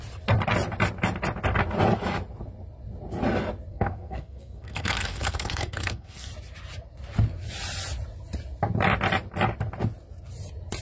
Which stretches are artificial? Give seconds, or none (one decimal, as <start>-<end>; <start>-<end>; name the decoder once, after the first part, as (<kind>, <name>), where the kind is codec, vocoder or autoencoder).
3.7-6.3 (codec, SNAC)